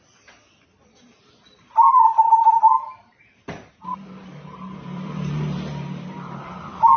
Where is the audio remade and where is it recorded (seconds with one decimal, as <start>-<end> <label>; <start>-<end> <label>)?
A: 0.0-7.0 remade